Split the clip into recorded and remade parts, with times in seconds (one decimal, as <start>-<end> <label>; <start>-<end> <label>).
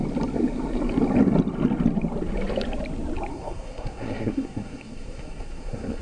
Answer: 0.0-3.3 recorded; 3.3-6.0 remade